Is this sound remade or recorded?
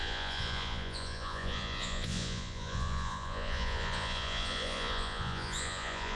remade